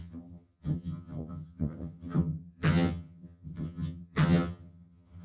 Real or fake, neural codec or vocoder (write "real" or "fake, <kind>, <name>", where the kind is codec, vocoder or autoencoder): fake, vocoder, HiFi-GAN